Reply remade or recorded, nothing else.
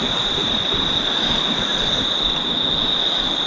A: recorded